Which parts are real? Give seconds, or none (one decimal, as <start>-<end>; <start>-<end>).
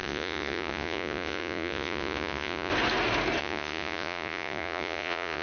2.7-3.4